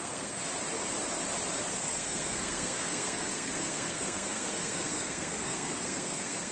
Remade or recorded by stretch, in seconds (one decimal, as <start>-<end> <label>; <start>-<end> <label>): 0.0-0.4 remade; 0.4-1.7 recorded; 1.7-6.5 remade